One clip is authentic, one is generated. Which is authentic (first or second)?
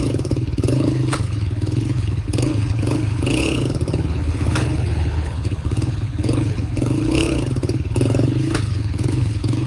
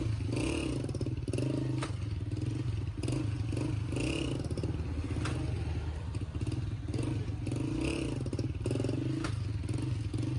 second